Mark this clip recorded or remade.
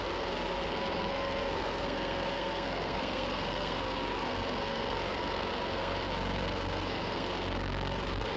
remade